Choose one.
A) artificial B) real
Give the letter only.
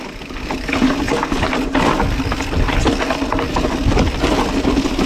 B